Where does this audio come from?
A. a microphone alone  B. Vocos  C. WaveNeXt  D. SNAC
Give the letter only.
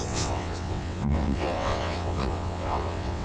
C